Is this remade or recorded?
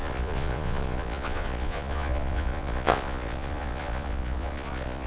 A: remade